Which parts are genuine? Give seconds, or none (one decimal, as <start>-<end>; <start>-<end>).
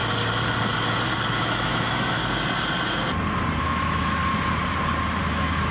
0.0-1.4; 2.2-3.6; 4.2-5.3